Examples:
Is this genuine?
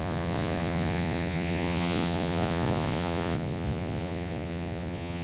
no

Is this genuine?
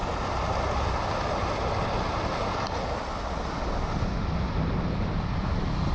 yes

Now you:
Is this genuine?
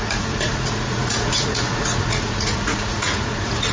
no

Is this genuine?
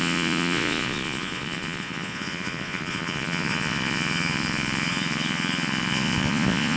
no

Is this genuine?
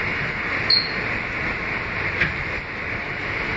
yes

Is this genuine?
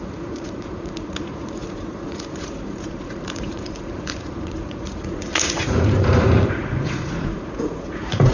no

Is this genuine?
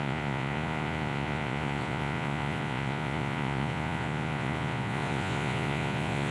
no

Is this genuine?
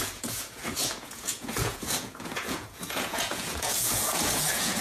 no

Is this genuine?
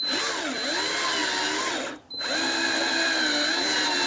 yes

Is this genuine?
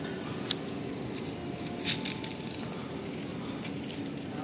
yes